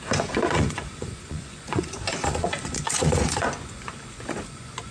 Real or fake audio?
fake